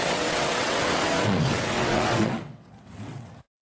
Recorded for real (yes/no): no